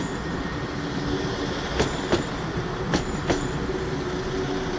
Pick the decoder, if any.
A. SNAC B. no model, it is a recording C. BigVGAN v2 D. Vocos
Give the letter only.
B